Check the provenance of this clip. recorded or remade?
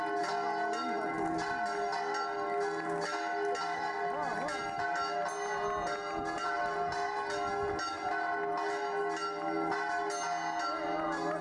recorded